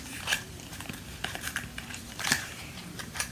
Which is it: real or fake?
fake